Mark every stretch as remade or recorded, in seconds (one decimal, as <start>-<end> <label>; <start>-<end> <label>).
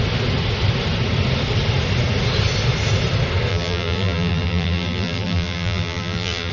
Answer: 0.0-3.5 recorded; 3.5-6.5 remade